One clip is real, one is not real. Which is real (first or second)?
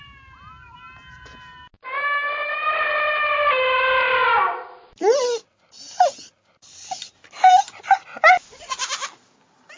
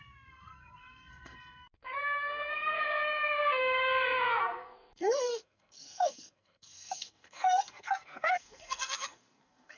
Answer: first